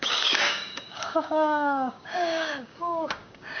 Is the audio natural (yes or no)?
no